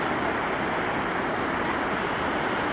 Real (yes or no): yes